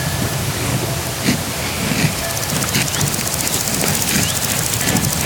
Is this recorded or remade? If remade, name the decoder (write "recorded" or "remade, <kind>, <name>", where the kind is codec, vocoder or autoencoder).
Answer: recorded